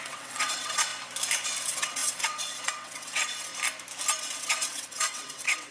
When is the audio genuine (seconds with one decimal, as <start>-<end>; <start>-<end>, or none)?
0.9-1.6; 3.5-4.2